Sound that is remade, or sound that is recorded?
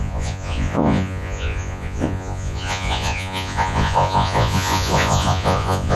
remade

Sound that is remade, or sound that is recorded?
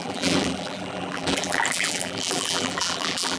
remade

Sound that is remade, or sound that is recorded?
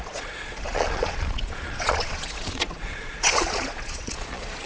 remade